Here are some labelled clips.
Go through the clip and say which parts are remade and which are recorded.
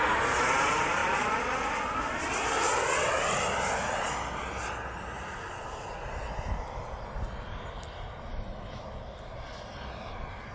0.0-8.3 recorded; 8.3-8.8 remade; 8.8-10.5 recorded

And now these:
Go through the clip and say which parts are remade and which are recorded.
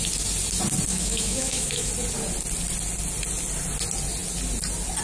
0.0-0.9 recorded; 0.9-1.9 remade; 1.9-5.0 recorded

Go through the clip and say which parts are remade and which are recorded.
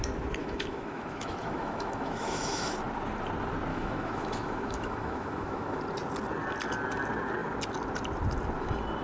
0.0-0.4 recorded; 0.4-2.7 remade; 2.7-3.7 recorded; 3.7-5.8 remade; 5.8-9.0 recorded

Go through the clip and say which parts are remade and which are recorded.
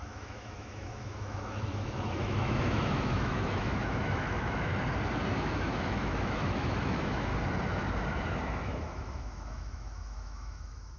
0.0-4.7 remade; 4.7-5.3 recorded; 5.3-7.3 remade; 7.3-8.4 recorded; 8.4-11.0 remade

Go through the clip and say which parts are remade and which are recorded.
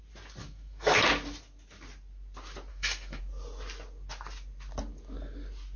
0.0-0.4 recorded; 0.4-1.0 remade; 1.0-2.7 recorded; 2.7-3.2 remade; 3.2-5.8 recorded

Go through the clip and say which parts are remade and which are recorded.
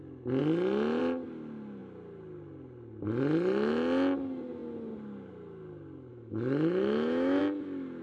0.0-6.1 recorded; 6.1-7.4 remade; 7.4-8.0 recorded